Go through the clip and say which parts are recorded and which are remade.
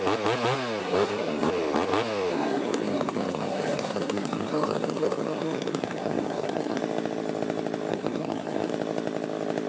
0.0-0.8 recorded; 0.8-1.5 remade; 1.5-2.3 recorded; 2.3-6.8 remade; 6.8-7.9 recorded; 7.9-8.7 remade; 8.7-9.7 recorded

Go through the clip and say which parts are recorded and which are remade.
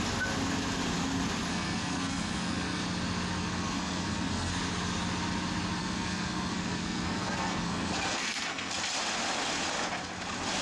0.0-1.5 recorded; 1.5-2.8 remade; 2.8-3.4 recorded; 3.4-4.5 remade; 4.5-5.8 recorded; 5.8-8.7 remade; 8.7-10.6 recorded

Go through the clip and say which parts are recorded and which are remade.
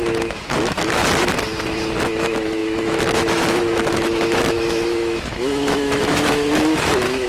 0.0-1.0 remade; 1.0-2.0 recorded; 2.0-7.3 remade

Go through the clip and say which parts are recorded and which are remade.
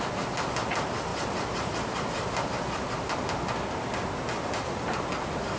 0.0-5.6 recorded